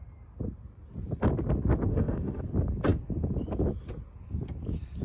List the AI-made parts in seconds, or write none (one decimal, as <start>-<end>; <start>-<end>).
1.9-2.4